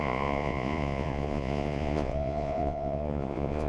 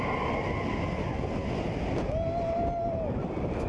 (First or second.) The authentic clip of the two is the second